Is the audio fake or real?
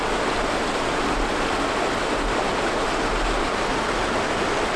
real